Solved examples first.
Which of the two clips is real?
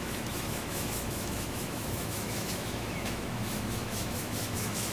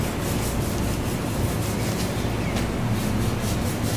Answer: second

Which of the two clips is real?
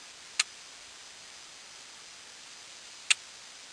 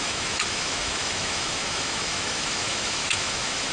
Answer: first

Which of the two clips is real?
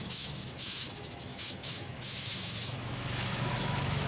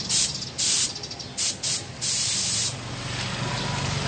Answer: second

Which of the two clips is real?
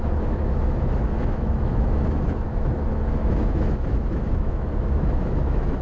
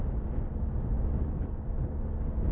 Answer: second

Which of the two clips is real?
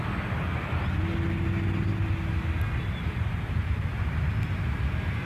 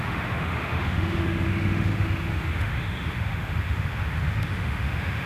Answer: first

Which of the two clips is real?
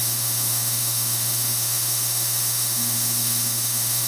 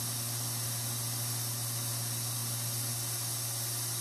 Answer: second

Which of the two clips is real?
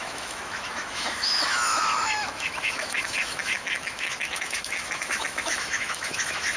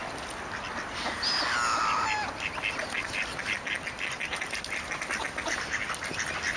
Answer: second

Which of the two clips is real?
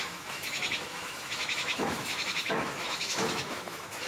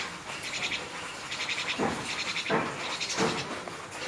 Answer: second